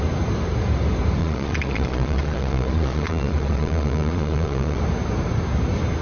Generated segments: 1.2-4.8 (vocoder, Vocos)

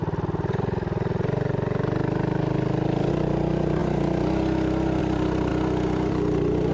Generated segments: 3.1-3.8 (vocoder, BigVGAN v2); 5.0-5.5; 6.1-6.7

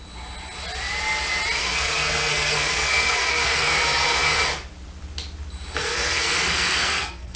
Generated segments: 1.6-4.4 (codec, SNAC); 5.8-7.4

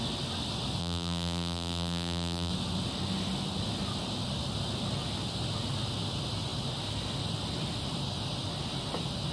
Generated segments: 0.8-2.5 (vocoder, BigVGAN v2)